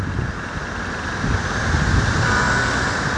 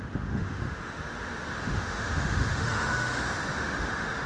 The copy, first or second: second